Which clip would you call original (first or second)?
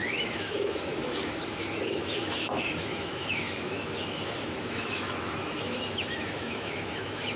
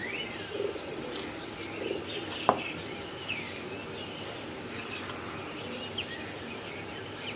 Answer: second